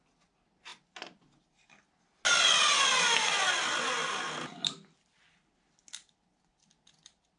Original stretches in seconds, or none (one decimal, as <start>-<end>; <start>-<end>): 0.0-7.4

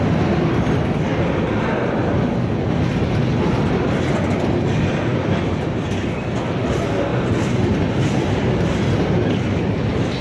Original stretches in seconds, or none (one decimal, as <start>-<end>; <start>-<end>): 0.0-10.2

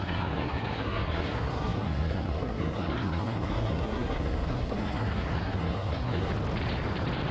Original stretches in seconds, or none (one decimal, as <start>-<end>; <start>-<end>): 6.3-7.3